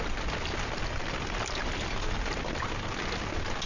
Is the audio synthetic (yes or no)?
no